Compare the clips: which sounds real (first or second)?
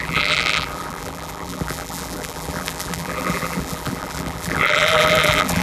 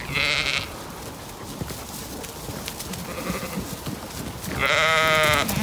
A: second